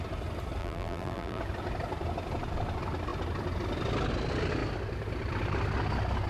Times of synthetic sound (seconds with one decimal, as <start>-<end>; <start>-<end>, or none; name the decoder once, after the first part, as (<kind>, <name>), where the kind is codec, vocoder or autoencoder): 0.6-1.4 (vocoder, BigVGAN v2)